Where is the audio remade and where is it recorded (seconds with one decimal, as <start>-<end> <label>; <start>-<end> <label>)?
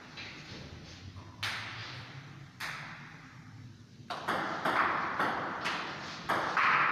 0.0-1.8 recorded; 1.8-5.9 remade; 5.9-6.9 recorded